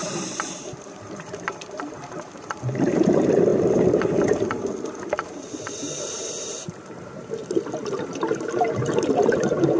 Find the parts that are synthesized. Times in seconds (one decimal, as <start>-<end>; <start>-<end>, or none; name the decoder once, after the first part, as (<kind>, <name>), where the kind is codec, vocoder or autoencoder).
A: 0.0-7.4 (vocoder, BigVGAN v2); 8.6-9.8